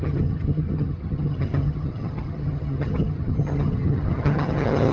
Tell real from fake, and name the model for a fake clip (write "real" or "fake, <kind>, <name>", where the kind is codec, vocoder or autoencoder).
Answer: fake, vocoder, HiFi-GAN